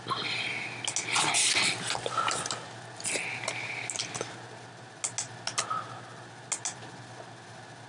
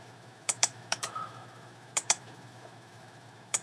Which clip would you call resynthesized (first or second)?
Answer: second